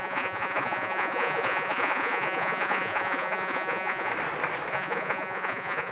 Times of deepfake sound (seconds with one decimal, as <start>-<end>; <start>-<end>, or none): 0.0-4.1; 4.7-5.9